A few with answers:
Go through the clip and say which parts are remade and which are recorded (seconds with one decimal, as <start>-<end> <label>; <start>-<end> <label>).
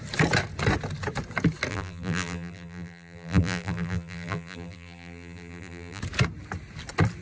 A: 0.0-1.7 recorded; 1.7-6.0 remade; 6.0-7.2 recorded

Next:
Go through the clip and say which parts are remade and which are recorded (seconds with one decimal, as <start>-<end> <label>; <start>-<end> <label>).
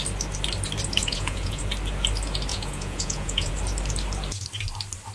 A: 0.0-1.0 recorded; 1.0-1.6 remade; 1.6-2.5 recorded; 2.5-3.5 remade; 3.5-5.1 recorded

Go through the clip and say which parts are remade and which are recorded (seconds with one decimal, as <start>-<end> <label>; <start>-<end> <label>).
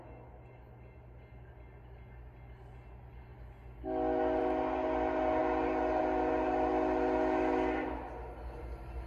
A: 0.0-9.1 recorded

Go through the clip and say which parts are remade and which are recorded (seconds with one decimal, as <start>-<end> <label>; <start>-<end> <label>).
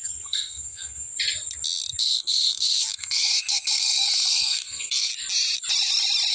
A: 0.0-1.1 remade; 1.1-2.0 recorded; 2.0-5.1 remade; 5.1-6.3 recorded